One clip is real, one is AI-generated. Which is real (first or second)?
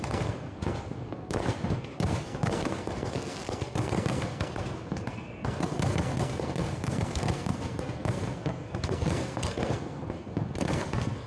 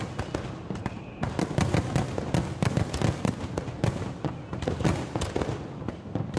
second